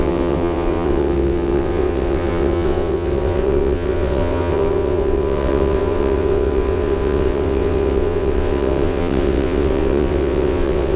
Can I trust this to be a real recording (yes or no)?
no